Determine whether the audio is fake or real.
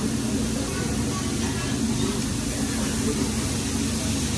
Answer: real